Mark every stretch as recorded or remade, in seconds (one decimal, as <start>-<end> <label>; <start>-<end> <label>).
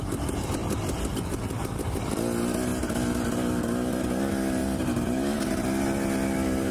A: 0.0-6.7 recorded